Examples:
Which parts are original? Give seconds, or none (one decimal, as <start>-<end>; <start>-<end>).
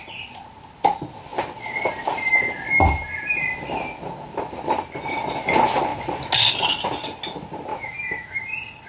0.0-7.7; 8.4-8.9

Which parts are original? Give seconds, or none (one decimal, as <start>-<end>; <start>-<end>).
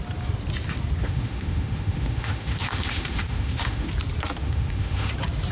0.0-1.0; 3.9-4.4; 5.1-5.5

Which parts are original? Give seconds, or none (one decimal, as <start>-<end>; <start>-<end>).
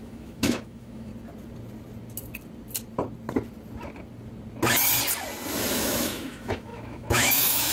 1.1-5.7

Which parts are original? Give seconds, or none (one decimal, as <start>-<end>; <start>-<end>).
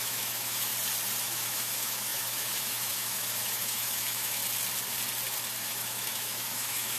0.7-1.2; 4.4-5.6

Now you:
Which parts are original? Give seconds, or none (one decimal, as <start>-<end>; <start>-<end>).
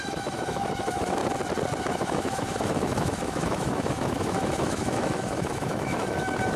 1.2-1.8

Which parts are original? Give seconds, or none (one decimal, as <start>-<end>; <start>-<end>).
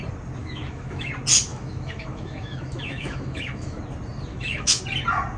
0.0-0.4; 1.1-1.5; 3.8-4.3; 4.8-5.4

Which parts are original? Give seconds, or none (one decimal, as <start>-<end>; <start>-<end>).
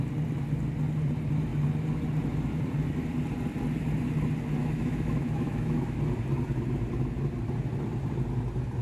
0.0-4.6; 6.0-8.8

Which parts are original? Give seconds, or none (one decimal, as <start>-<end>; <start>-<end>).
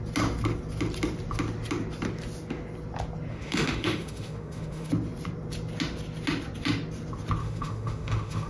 0.0-3.3; 4.9-7.4